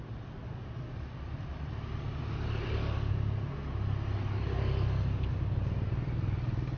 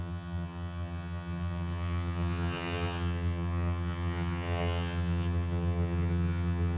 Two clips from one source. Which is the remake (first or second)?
second